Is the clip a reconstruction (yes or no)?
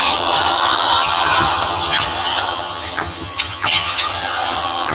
yes